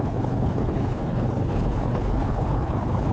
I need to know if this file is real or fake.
fake